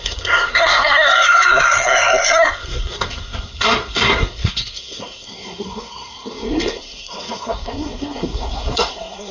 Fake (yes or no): yes